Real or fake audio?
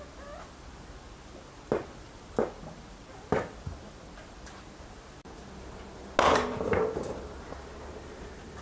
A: real